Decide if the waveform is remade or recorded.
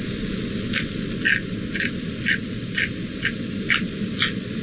recorded